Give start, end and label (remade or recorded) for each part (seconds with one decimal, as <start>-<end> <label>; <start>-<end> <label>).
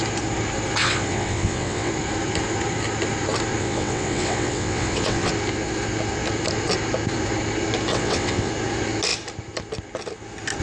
0.0-0.8 recorded; 0.8-1.9 remade; 1.9-3.6 recorded; 3.6-5.3 remade; 5.3-7.9 recorded; 7.9-8.5 remade; 8.5-10.6 recorded